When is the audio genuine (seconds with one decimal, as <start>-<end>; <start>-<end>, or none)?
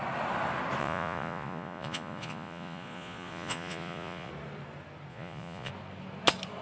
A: 0.0-0.8; 4.3-5.1; 5.7-6.6